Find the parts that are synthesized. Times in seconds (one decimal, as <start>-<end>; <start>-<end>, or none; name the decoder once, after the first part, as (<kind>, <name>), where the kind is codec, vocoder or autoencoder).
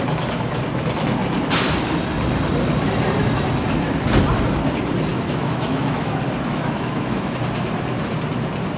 5.1-6.1 (autoencoder, DAC-VAE); 6.5-7.4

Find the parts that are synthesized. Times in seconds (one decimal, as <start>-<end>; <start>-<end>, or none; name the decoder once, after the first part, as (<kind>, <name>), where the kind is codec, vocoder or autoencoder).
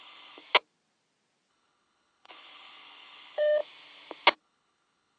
0.0-0.4 (codec, HILCodec); 1.5-3.6; 4.4-5.2